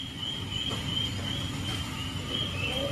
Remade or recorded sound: recorded